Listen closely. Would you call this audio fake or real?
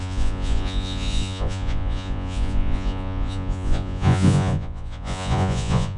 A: fake